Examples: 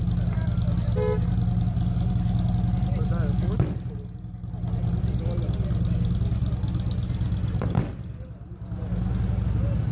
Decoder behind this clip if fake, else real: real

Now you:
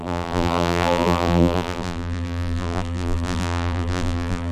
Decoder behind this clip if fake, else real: fake, vocoder, BigVGAN v2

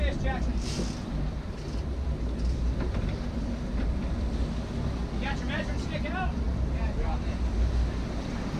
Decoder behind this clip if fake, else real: real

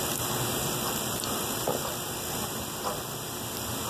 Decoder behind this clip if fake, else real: real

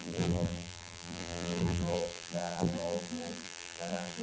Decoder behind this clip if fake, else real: fake, vocoder, BigVGAN v2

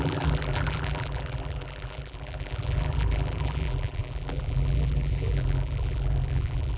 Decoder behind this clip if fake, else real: fake, vocoder, BigVGAN v2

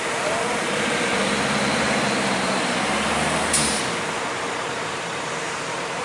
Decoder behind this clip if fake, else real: fake, vocoder, BigVGAN v2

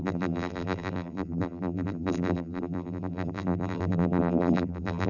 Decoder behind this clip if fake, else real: fake, vocoder, BigVGAN v2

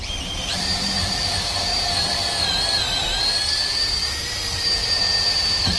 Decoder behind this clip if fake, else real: fake, vocoder, BigVGAN v2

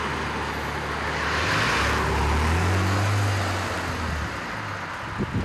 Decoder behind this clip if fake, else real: real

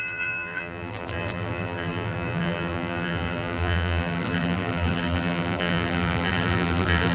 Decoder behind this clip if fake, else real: fake, vocoder, BigVGAN v2